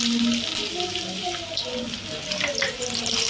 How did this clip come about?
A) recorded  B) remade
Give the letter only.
A